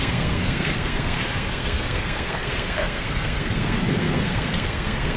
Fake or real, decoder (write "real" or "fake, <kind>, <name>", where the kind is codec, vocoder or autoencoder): fake, codec, SNAC